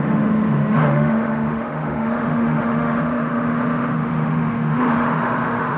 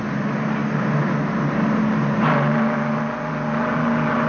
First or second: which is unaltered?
second